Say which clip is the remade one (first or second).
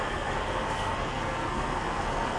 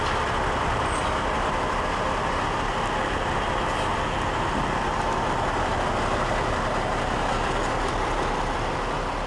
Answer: first